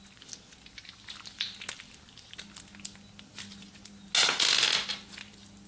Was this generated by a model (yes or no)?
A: no